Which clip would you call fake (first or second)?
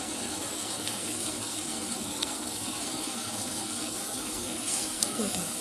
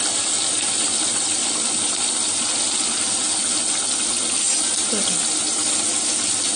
first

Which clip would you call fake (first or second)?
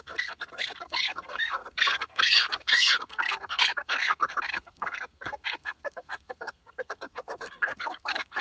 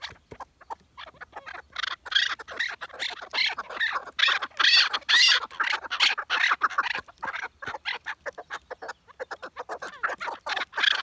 first